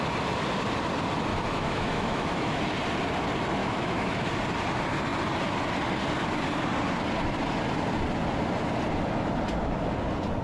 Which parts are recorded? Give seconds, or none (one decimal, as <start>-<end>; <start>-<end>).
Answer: 0.0-1.3; 2.6-3.6; 4.3-10.4